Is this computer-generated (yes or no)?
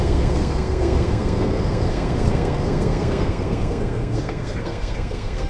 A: yes